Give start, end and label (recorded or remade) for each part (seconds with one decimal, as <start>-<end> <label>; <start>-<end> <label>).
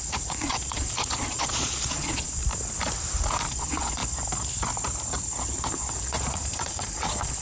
0.0-2.4 remade; 2.4-3.5 recorded; 3.5-4.0 remade; 4.0-5.4 recorded; 5.4-7.4 remade